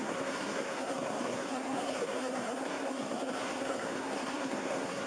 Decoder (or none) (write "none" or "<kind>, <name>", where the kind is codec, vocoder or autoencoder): codec, SNAC